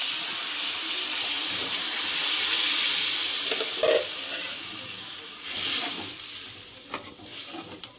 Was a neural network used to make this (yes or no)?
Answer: yes